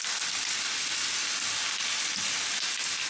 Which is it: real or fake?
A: real